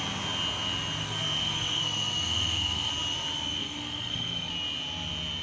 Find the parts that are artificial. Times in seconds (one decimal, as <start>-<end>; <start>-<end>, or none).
1.0-2.9; 3.6-4.5